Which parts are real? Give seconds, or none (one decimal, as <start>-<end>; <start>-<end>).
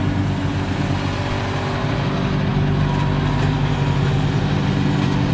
0.0-5.3